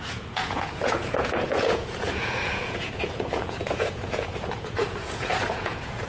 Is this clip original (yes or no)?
no